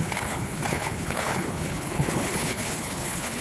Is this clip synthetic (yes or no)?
yes